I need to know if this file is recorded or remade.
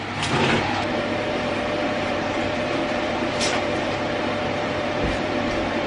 remade